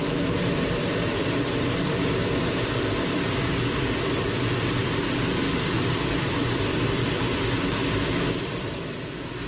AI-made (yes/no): yes